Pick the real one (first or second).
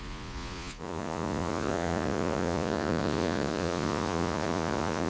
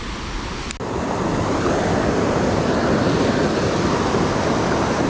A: second